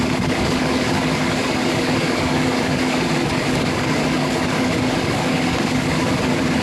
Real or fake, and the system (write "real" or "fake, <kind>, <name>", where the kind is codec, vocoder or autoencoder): fake, codec, DAC